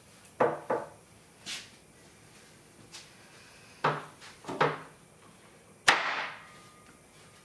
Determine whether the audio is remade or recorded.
recorded